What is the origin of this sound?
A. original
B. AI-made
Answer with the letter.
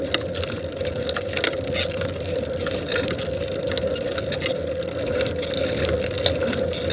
A